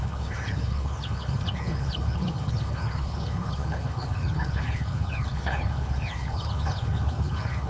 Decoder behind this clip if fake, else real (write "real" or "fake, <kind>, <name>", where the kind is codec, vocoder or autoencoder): fake, codec, HILCodec